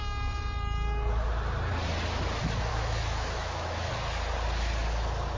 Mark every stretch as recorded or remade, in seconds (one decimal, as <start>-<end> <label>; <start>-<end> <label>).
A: 0.0-2.7 recorded; 2.7-3.9 remade; 3.9-5.4 recorded